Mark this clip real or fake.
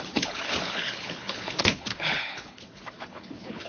fake